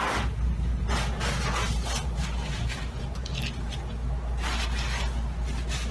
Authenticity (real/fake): real